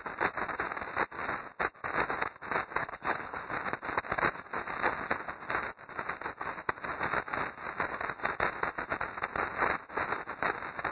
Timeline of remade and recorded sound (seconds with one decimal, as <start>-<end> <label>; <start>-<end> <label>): 0.0-2.8 recorded; 2.8-3.4 remade; 3.4-10.9 recorded